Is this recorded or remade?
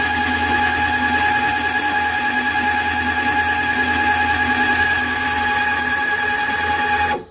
recorded